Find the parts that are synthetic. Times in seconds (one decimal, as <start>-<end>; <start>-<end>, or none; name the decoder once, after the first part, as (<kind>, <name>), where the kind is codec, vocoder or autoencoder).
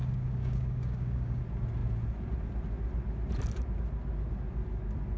0.0-1.4 (codec, DAC)